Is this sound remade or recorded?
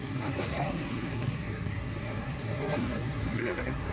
remade